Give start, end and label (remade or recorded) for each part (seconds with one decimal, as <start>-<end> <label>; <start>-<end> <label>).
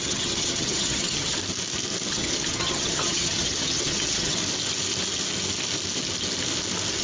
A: 0.0-1.4 remade; 1.4-2.1 recorded; 2.1-4.4 remade; 4.4-7.0 recorded